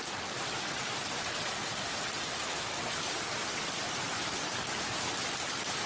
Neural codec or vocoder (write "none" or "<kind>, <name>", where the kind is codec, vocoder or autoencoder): vocoder, BigVGAN v2